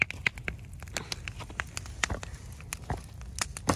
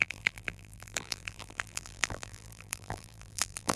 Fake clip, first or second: second